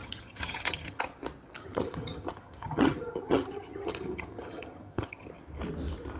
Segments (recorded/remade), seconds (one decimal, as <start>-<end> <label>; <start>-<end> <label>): 0.0-1.0 remade; 1.0-1.6 recorded; 1.6-5.3 remade; 5.3-6.2 recorded